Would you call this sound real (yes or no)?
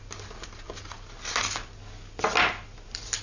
yes